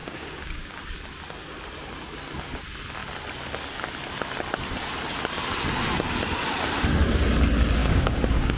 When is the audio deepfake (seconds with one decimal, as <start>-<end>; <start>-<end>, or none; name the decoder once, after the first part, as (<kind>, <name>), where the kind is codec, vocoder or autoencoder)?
0.0-0.8 (codec, DAC); 7.8-8.6